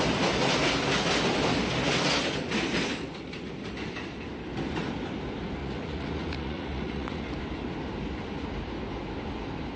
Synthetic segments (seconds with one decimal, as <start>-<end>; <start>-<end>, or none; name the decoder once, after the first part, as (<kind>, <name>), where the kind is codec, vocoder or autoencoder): 5.6-7.3 (vocoder, Vocos)